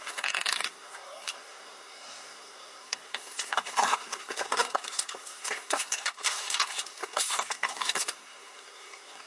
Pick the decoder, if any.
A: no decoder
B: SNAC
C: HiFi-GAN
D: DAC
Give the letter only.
B